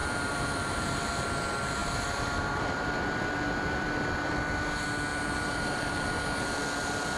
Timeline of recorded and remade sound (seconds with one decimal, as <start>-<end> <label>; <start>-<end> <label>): 0.0-1.1 remade; 1.1-1.8 recorded; 1.8-2.9 remade; 2.9-5.1 recorded; 5.1-6.1 remade; 6.1-7.2 recorded

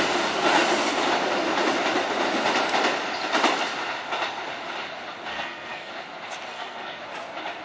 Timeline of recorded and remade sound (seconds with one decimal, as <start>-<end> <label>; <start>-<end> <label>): 0.0-5.3 recorded; 5.3-5.9 remade; 5.9-6.5 recorded; 6.5-7.0 remade; 7.0-7.6 recorded

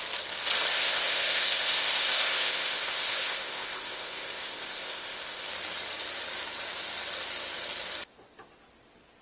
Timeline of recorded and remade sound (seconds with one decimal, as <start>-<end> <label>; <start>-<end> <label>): 0.0-0.7 recorded; 0.7-5.5 remade; 5.5-9.2 recorded

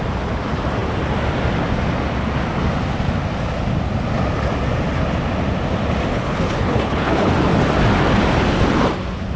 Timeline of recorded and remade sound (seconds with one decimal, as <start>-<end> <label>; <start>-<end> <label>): 0.0-6.1 recorded; 6.1-7.3 remade; 7.3-9.4 recorded